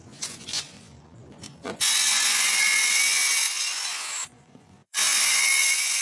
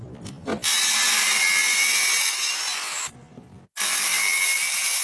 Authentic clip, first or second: second